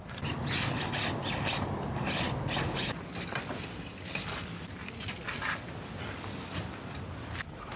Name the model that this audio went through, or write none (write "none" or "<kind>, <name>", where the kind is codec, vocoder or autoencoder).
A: none